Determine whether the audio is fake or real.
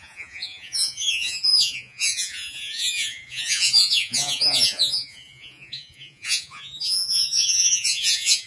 fake